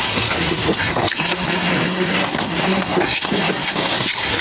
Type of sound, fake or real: fake